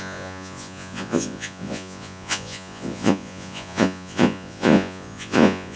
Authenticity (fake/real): fake